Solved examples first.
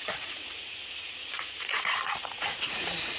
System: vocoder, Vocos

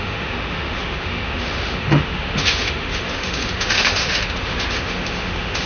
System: autoencoder, DAC-VAE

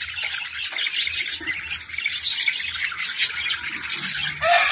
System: none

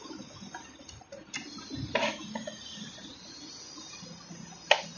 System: none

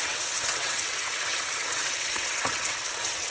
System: vocoder, WaveNeXt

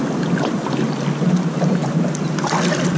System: none